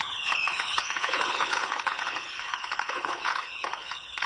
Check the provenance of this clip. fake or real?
fake